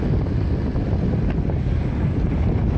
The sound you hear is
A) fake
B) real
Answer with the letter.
B